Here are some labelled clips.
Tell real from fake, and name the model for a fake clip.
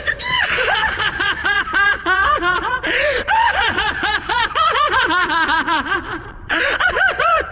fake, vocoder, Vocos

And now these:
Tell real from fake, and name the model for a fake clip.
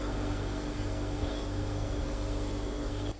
fake, codec, SNAC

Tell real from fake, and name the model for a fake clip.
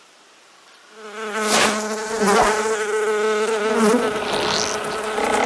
real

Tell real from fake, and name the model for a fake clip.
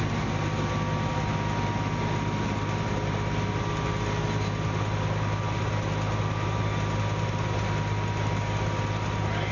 real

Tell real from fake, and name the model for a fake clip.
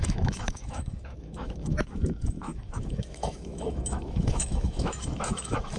fake, autoencoder, DAC-VAE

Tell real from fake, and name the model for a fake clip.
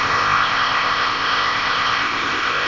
fake, codec, ZipCodec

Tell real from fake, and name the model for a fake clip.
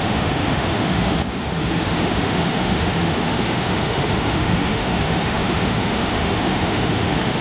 fake, autoencoder, DAC-VAE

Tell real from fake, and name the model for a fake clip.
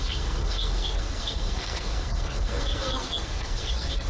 fake, codec, SNAC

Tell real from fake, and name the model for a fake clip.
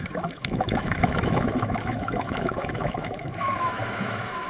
fake, autoencoder, DAC-VAE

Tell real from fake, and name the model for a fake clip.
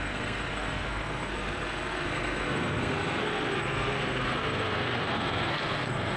fake, codec, SNAC